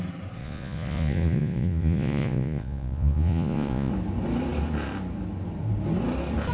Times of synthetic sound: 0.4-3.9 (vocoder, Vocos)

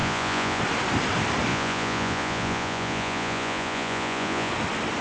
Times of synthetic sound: 0.0-0.6 (vocoder, Vocos); 1.5-4.5

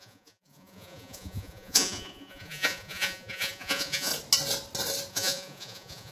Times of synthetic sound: 0.0-4.1 (vocoder, Vocos); 5.1-6.1

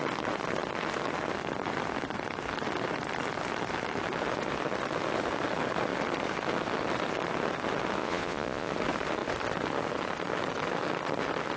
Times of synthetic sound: 8.0-8.7 (vocoder, Vocos)

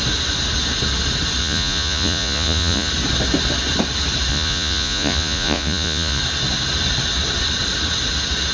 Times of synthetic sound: 1.4-2.9 (vocoder, Vocos); 4.3-6.2

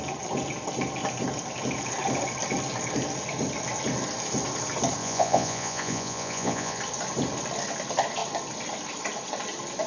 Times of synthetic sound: 5.0-6.8 (vocoder, Vocos)

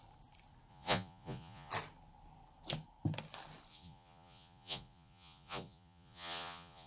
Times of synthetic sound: 0.7-1.7 (vocoder, Vocos); 3.7-6.9

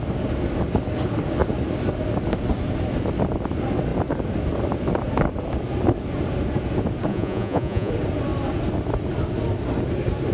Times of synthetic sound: 7.1-7.9 (vocoder, Vocos)